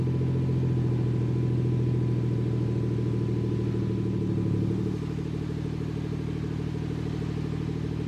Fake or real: real